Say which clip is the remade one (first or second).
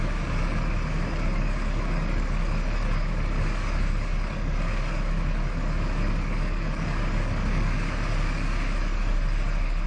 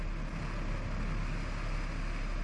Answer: first